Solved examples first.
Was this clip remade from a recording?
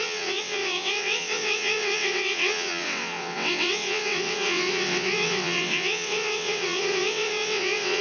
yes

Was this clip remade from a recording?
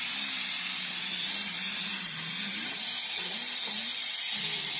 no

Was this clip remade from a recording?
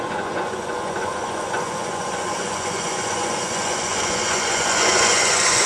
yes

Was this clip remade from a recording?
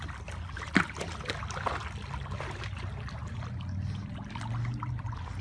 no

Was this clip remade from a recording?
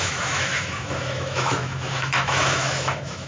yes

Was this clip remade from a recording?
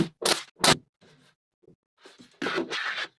no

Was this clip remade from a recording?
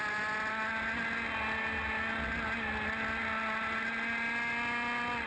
no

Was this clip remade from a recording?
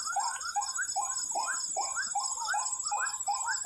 no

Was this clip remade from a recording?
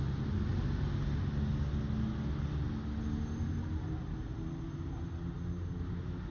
no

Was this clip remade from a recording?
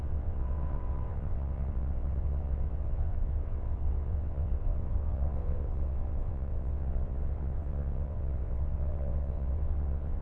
yes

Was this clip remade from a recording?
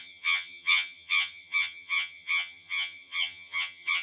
yes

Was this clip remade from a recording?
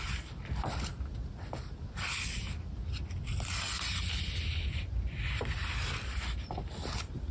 no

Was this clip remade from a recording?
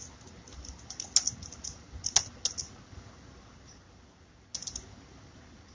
no